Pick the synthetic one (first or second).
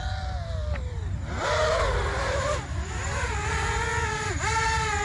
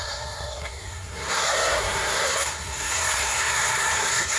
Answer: second